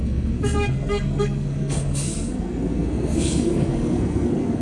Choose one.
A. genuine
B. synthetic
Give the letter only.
B